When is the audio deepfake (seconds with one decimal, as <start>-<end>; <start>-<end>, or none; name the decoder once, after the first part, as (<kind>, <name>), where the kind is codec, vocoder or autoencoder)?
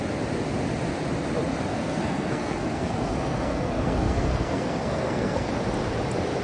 1.7-5.5 (codec, SNAC)